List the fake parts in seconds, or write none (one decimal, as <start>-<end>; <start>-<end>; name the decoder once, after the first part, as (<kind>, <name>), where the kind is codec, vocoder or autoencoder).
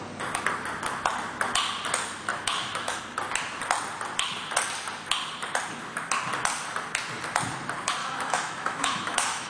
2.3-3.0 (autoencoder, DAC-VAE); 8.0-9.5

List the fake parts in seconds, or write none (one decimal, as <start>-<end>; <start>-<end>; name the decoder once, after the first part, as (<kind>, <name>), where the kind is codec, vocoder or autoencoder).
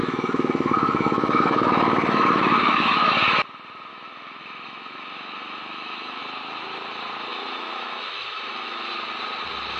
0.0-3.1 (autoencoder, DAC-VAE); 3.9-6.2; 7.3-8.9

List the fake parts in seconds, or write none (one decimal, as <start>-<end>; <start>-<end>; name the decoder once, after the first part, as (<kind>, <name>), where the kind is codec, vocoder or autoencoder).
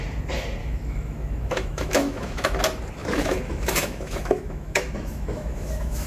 0.6-2.6 (autoencoder, DAC-VAE); 3.0-6.1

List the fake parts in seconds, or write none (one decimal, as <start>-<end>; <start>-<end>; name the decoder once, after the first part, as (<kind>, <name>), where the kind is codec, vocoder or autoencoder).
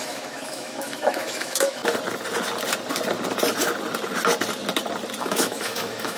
0.0-1.8 (autoencoder, DAC-VAE); 5.2-6.2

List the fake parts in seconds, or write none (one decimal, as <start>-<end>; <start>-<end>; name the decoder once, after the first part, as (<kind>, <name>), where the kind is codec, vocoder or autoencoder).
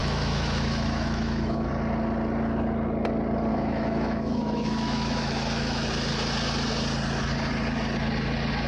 0.0-1.7 (autoencoder, DAC-VAE); 3.5-5.9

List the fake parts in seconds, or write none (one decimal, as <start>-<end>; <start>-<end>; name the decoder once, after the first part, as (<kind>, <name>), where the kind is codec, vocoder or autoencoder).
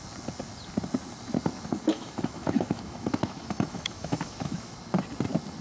1.9-4.8 (autoencoder, DAC-VAE)